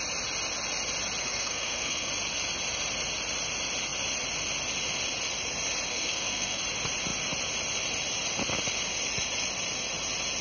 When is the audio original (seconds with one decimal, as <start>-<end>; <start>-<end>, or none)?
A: 0.0-1.2; 2.1-5.9; 6.6-10.4